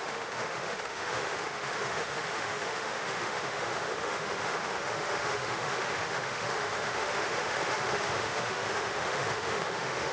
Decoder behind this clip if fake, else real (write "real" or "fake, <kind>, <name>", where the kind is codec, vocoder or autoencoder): fake, autoencoder, DAC-VAE